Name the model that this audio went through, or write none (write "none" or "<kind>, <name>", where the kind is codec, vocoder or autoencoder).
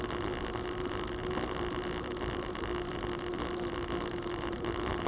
none